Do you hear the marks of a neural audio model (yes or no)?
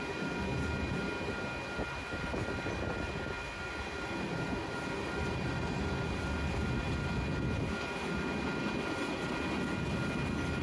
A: no